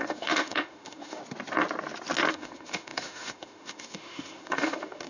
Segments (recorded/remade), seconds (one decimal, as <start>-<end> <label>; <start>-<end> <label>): 0.0-1.2 remade; 1.2-2.3 recorded; 2.3-5.1 remade